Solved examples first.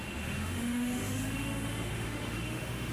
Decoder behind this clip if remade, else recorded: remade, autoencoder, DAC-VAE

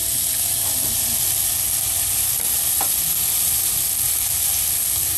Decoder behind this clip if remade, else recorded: recorded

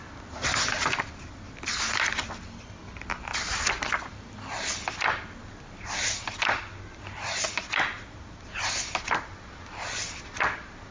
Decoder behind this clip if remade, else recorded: recorded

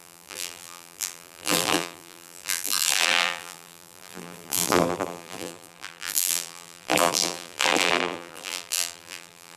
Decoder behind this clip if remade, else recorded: remade, vocoder, BigVGAN v2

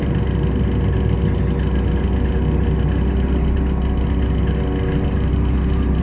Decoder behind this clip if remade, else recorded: recorded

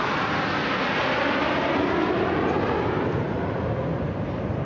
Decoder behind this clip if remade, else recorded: recorded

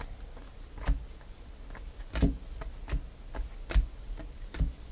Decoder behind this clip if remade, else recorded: recorded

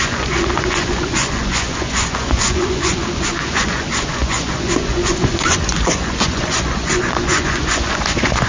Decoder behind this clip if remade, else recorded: remade, vocoder, Vocos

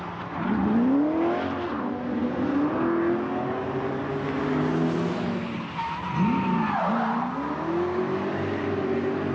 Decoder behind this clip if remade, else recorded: recorded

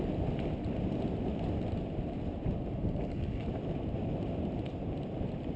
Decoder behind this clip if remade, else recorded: recorded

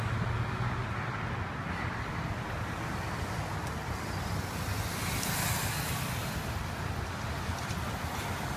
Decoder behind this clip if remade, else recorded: recorded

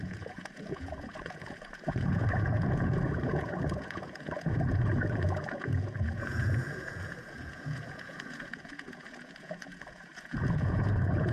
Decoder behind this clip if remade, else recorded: remade, vocoder, Vocos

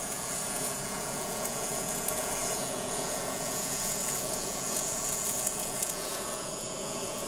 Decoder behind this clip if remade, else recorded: remade, vocoder, Vocos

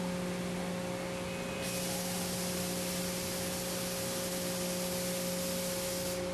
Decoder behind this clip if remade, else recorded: recorded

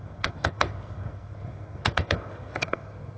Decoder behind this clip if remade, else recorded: remade, codec, SNAC